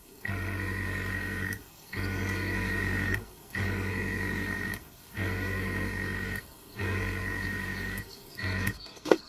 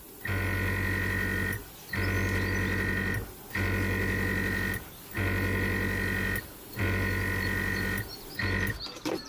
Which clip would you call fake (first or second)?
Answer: first